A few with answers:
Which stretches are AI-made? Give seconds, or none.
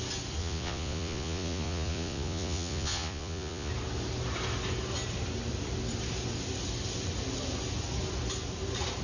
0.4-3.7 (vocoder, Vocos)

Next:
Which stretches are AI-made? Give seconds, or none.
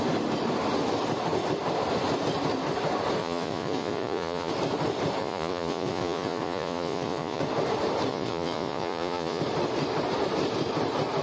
3.2-4.5 (vocoder, Vocos); 5.2-7.4; 8.1-9.4